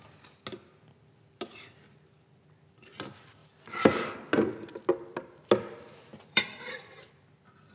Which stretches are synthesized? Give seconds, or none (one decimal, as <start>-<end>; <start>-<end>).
6.1-7.1